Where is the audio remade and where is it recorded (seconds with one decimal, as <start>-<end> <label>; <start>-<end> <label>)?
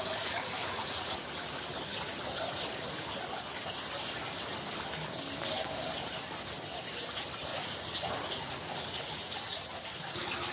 0.0-0.6 recorded; 0.6-1.2 remade; 1.2-7.5 recorded; 7.5-9.8 remade; 9.8-10.5 recorded